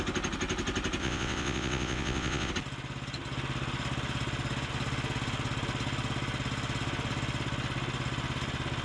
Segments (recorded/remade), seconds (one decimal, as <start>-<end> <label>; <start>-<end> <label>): 0.0-1.0 recorded; 1.0-2.5 remade; 2.5-8.8 recorded